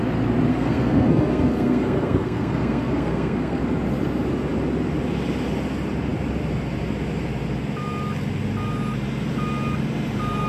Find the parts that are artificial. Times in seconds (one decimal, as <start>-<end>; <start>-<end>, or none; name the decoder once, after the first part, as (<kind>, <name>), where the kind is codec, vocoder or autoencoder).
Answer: 0.5-3.6 (codec, SNAC)